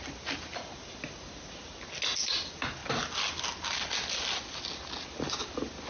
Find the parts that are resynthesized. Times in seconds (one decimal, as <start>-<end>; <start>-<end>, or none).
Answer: none